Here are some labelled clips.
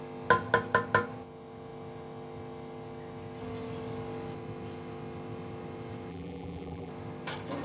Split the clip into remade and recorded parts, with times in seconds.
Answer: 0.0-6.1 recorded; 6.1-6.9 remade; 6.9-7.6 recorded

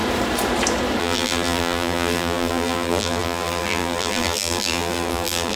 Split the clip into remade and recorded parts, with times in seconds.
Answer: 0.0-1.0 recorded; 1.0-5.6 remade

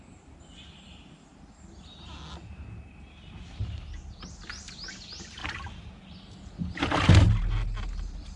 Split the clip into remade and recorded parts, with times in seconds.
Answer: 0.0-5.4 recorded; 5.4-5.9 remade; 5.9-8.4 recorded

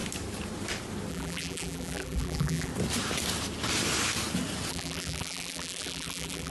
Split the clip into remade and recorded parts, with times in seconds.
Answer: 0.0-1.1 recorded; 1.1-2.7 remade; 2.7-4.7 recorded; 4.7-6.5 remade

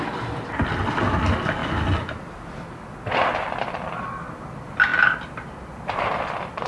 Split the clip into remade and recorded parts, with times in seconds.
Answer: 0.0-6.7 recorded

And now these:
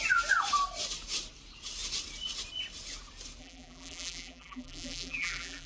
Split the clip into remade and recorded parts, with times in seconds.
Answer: 0.0-3.4 recorded; 3.4-5.7 remade

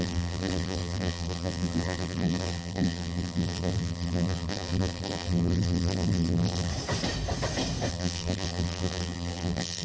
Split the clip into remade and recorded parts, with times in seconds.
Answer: 0.0-6.7 remade; 6.7-7.9 recorded; 7.9-9.8 remade

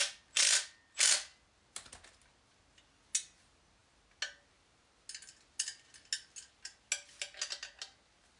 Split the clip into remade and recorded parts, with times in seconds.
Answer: 0.0-8.4 recorded